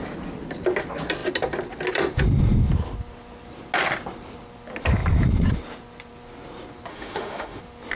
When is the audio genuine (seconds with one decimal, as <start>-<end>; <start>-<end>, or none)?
0.0-6.9; 7.6-8.0